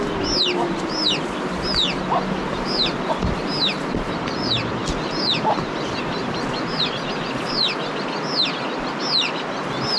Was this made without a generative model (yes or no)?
yes